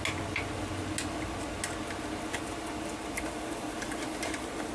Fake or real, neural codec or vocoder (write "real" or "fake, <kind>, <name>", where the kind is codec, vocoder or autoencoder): real